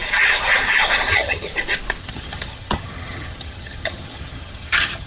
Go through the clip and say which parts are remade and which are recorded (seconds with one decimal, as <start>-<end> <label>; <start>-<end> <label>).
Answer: 0.0-1.1 recorded; 1.1-1.5 remade; 1.5-2.0 recorded; 2.0-5.1 remade